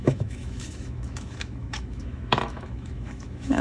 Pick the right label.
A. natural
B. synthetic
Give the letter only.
B